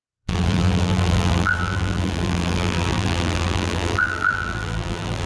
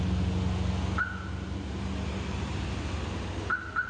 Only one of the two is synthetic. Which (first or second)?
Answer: first